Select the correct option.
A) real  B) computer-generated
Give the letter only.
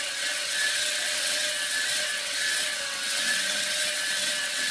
B